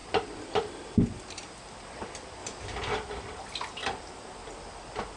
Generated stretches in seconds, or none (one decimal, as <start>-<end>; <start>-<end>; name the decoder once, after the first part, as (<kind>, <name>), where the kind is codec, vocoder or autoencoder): none